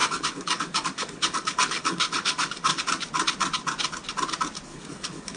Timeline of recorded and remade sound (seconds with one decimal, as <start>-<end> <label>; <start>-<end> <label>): 0.0-2.8 remade; 2.8-4.7 recorded; 4.7-5.4 remade